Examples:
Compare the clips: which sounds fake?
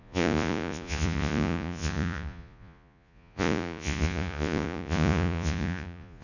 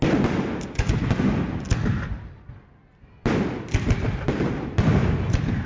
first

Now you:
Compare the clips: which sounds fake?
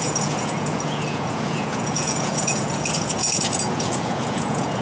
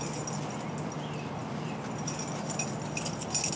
first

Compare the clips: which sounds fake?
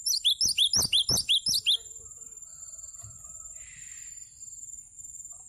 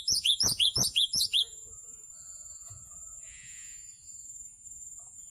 second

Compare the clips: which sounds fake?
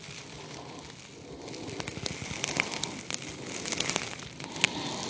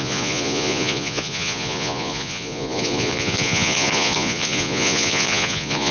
second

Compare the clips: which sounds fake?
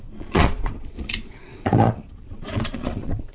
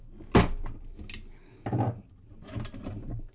first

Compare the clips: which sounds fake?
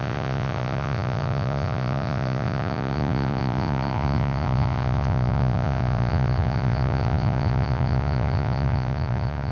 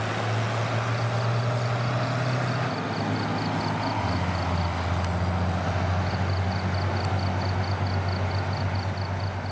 first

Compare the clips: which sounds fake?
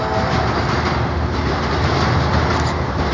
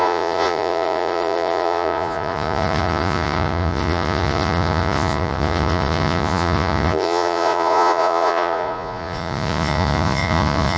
second